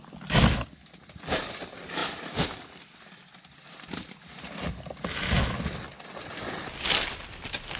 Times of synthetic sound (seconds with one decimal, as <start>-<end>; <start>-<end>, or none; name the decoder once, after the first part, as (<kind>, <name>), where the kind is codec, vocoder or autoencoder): none